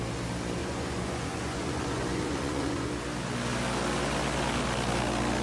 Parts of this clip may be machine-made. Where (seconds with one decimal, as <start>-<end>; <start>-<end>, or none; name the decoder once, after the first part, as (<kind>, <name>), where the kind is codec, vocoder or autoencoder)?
0.6-2.9 (vocoder, Vocos)

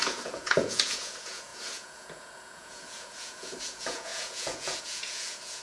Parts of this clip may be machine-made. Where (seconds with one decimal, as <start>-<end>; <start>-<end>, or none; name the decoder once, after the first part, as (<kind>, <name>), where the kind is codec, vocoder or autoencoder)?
0.0-5.6 (vocoder, Vocos)

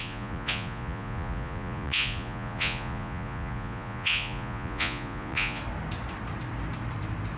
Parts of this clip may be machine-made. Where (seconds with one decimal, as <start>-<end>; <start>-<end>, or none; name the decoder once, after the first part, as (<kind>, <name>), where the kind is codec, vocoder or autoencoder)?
0.0-5.6 (vocoder, Vocos)

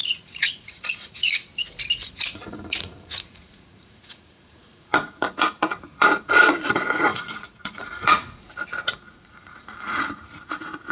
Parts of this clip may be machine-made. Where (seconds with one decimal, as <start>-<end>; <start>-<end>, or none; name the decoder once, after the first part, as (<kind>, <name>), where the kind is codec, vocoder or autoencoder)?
0.0-1.5 (vocoder, Vocos); 2.1-10.9